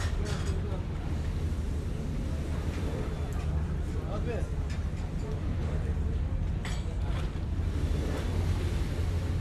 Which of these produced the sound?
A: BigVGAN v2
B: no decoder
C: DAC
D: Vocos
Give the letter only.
B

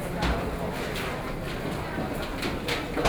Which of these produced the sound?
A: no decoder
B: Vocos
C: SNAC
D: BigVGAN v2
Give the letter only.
A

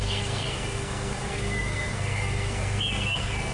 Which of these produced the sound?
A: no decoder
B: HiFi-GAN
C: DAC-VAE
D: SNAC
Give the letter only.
D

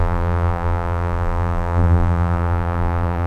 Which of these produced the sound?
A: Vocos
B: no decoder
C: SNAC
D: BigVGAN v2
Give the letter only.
D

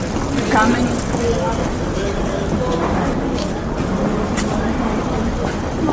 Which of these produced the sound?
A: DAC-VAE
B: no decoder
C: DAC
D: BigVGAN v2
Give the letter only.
B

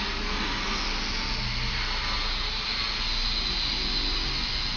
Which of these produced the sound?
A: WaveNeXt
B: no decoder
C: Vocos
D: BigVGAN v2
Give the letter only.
B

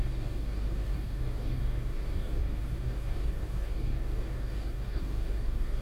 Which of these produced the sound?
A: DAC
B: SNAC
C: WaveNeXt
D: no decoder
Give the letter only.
A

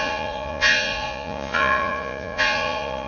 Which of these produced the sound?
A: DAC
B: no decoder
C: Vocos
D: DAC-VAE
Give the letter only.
C